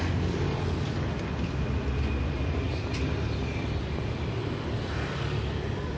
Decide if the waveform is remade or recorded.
recorded